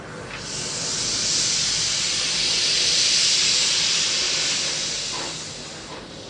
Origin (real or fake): real